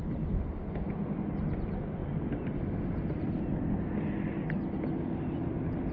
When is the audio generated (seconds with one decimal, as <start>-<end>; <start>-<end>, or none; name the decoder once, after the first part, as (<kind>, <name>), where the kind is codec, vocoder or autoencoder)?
none